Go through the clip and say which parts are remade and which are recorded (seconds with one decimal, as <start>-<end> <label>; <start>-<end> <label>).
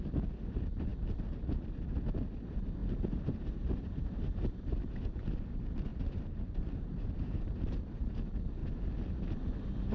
0.0-2.8 recorded; 2.8-5.2 remade; 5.2-5.9 recorded; 5.9-8.1 remade; 8.1-9.9 recorded